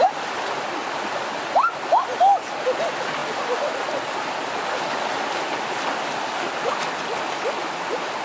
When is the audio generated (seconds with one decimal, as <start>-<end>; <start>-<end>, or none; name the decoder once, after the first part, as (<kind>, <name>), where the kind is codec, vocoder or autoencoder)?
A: none